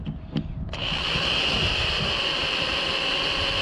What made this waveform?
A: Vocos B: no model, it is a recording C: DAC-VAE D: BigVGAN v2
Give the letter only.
B